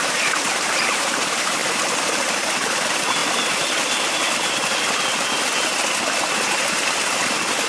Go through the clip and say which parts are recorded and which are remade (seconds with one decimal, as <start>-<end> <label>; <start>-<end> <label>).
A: 0.0-1.6 remade; 1.6-2.2 recorded; 2.2-3.2 remade; 3.2-7.7 recorded